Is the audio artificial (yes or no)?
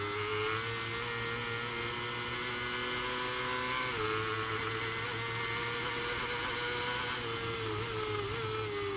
no